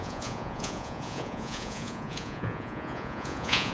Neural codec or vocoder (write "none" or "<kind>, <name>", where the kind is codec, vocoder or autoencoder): vocoder, Vocos